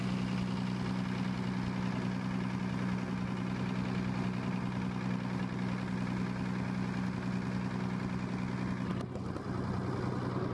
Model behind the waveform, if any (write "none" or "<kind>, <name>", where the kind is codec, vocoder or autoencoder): none